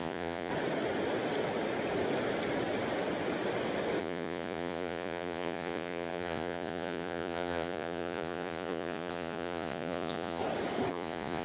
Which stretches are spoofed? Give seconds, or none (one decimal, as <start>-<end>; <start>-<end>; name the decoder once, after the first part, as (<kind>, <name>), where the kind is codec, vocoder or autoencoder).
0.0-0.5 (vocoder, Vocos); 4.0-10.4; 10.9-11.4